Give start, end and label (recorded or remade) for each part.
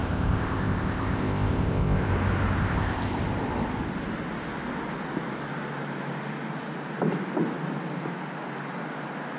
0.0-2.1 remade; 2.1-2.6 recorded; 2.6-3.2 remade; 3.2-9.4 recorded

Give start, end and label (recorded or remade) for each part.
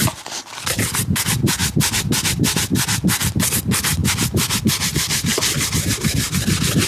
0.0-4.0 remade; 4.0-4.6 recorded; 4.6-5.3 remade; 5.3-5.9 recorded; 5.9-6.9 remade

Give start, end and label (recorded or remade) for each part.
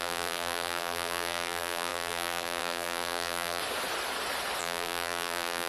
0.0-3.6 remade; 3.6-4.6 recorded; 4.6-5.7 remade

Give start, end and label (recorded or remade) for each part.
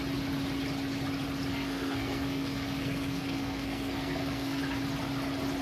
0.0-1.5 recorded; 1.5-4.6 remade; 4.6-5.6 recorded